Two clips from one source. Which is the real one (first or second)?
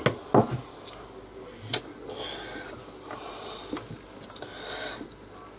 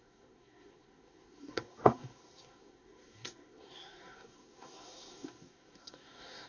first